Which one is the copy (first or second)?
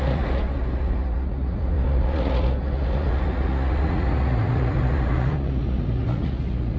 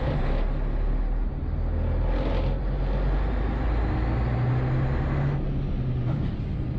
first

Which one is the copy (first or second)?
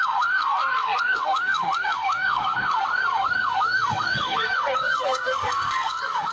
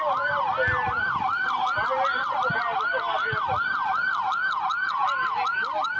first